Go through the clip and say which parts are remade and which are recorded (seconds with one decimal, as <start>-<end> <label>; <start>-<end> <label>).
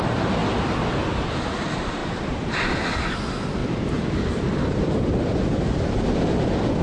0.0-2.0 recorded; 2.0-3.0 remade; 3.0-3.6 recorded; 3.6-5.4 remade; 5.4-6.8 recorded